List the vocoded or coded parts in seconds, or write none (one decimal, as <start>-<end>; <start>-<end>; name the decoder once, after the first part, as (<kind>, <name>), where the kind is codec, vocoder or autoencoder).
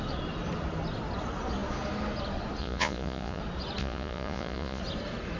2.6-3.4 (vocoder, Vocos); 3.8-4.8